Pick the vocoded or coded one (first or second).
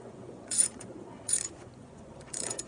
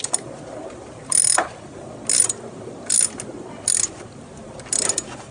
first